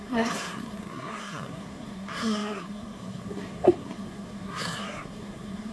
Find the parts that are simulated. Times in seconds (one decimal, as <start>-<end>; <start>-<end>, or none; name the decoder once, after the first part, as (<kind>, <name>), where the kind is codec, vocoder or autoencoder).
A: 0.0-5.7 (codec, SNAC)